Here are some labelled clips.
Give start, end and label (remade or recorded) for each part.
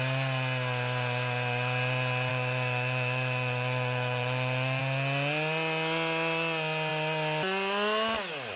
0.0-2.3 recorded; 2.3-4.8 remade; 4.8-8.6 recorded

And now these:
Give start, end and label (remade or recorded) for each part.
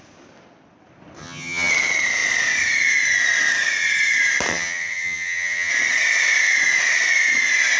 0.0-1.2 recorded; 1.2-1.7 remade; 1.7-4.5 recorded; 4.5-5.7 remade; 5.7-7.8 recorded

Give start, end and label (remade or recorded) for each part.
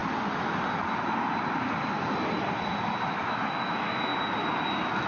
0.0-3.1 recorded; 3.1-4.1 remade; 4.1-5.1 recorded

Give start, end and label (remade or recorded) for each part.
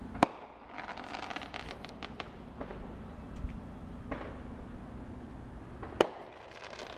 0.0-7.0 recorded